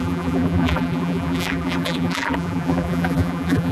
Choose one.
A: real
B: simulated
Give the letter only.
B